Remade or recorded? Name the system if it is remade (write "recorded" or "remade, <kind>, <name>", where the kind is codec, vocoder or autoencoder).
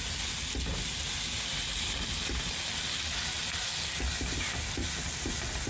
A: recorded